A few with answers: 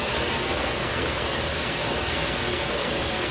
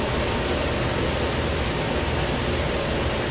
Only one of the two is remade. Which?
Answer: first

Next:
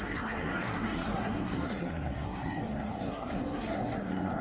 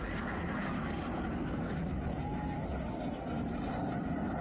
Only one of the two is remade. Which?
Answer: first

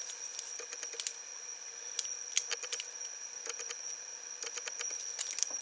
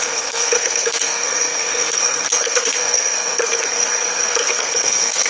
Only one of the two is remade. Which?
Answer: second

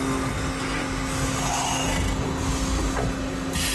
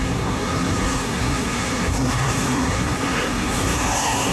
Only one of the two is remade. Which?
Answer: second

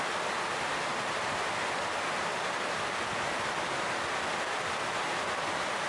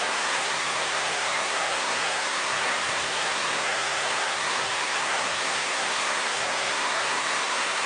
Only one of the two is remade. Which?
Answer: second